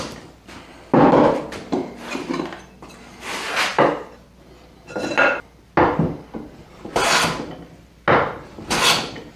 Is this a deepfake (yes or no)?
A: no